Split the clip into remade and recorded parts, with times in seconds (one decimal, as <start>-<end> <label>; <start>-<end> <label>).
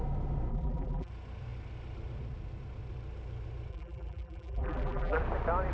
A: 0.0-0.5 recorded; 0.5-1.1 remade; 1.1-3.7 recorded; 3.7-5.2 remade; 5.2-5.7 recorded